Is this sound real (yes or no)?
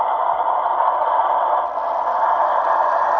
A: yes